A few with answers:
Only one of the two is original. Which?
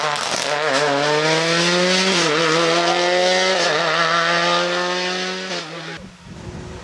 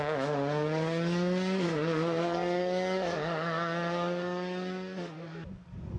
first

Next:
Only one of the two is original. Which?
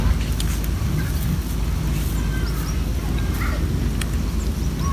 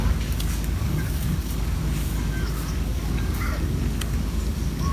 first